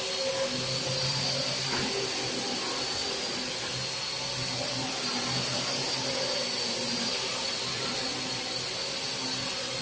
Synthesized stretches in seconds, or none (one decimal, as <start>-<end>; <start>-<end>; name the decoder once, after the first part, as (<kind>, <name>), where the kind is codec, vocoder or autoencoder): none